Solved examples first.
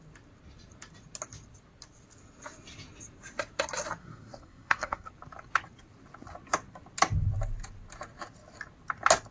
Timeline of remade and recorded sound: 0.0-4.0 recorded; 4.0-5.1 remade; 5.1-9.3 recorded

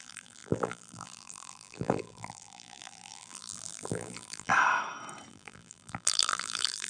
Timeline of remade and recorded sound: 0.0-4.5 remade; 4.5-5.3 recorded; 5.3-6.9 remade

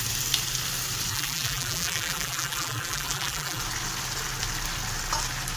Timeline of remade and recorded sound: 0.0-1.1 recorded; 1.1-3.6 remade; 3.6-5.6 recorded

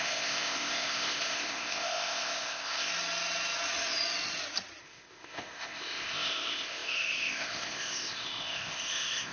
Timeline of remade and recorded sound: 0.0-2.9 remade; 2.9-4.8 recorded; 4.8-9.3 remade